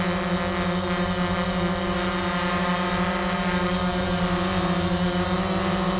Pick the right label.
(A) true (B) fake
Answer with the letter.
A